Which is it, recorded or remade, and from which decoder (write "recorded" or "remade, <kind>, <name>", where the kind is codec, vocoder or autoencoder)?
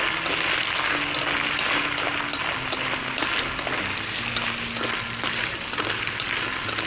recorded